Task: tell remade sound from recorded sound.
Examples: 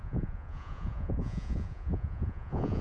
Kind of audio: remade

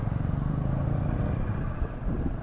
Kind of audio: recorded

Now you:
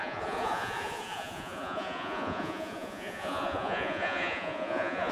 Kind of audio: remade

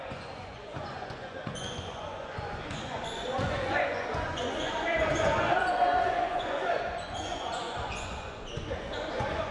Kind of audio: remade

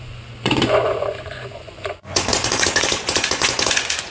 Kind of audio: remade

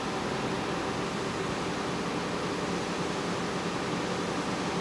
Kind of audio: recorded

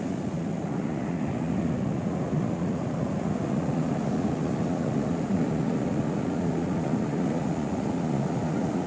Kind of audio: remade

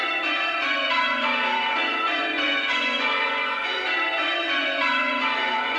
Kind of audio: remade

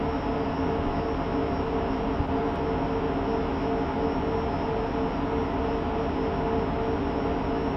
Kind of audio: recorded